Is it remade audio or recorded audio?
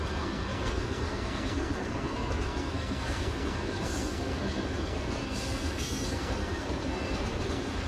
remade